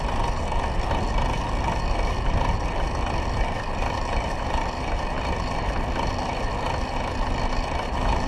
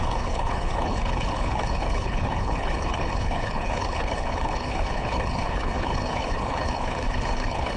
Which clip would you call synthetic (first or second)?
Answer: second